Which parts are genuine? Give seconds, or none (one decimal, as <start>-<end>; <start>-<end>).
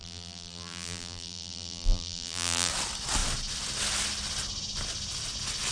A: 2.7-5.7